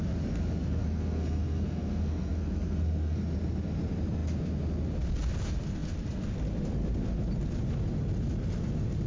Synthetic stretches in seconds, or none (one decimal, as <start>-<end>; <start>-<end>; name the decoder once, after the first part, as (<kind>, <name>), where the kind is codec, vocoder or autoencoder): 0.6-3.2 (codec, SNAC)